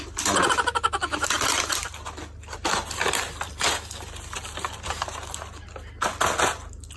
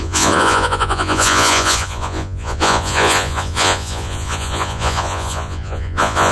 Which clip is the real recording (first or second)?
first